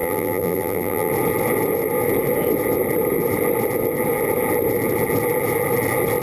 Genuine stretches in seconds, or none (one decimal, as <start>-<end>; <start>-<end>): 1.1-6.2